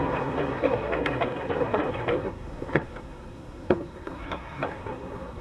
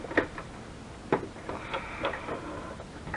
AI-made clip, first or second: first